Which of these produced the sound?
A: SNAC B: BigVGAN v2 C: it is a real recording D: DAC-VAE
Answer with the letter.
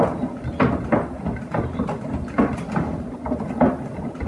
C